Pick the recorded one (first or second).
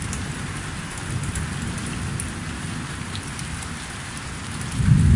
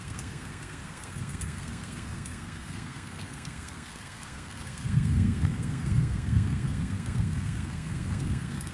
first